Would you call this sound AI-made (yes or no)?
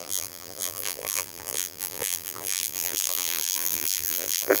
yes